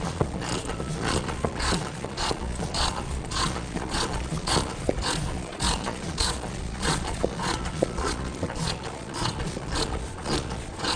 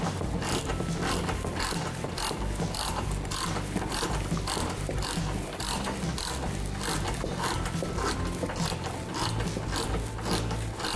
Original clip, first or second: second